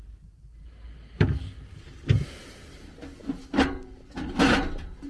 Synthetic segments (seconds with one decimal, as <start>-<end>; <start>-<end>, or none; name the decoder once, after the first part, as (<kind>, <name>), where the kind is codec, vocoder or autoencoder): none